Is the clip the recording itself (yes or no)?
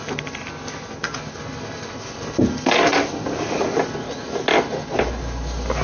yes